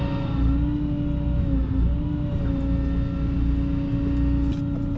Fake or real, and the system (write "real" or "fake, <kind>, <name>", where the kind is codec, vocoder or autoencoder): real